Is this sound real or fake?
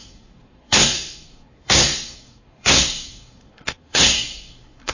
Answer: fake